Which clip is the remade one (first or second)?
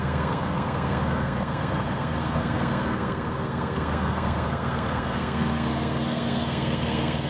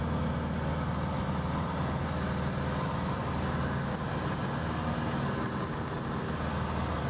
first